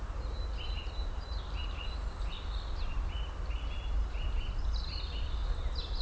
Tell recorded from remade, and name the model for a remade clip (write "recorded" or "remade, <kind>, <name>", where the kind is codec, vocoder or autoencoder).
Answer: recorded